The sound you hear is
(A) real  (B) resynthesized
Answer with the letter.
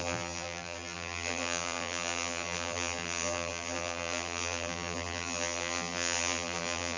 B